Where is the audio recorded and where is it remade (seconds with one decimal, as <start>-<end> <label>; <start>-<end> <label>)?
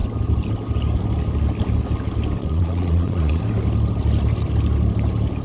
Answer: 0.0-2.4 recorded; 2.4-3.4 remade; 3.4-5.4 recorded